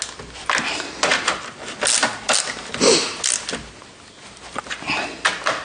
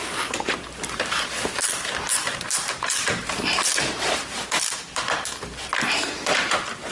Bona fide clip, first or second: first